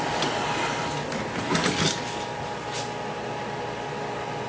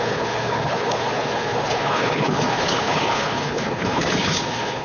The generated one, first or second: second